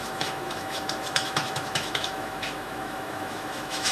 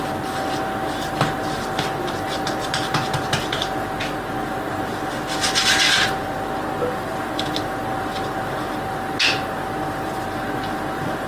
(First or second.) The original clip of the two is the second